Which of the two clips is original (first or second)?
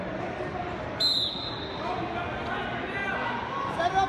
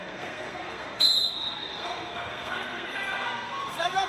first